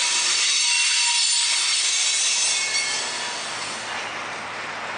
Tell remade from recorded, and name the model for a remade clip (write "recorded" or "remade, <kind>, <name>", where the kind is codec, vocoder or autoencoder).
recorded